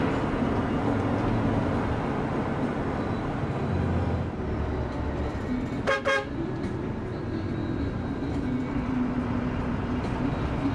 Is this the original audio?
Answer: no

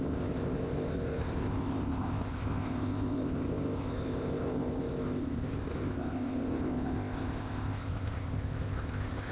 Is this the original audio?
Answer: no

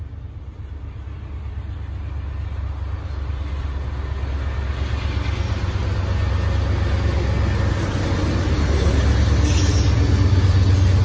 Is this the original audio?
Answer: yes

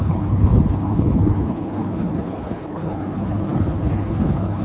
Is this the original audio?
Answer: no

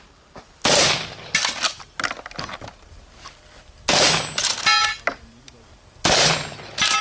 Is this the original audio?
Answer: yes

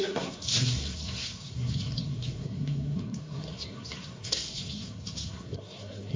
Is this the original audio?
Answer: no